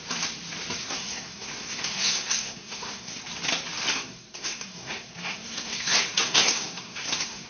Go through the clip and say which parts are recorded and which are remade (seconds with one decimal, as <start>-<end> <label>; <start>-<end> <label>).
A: 0.0-0.8 recorded; 0.8-3.2 remade; 3.2-3.9 recorded; 3.9-7.5 remade